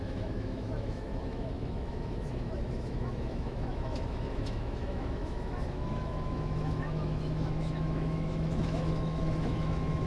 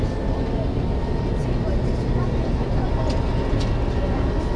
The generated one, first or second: first